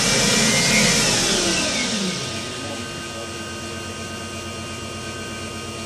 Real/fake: real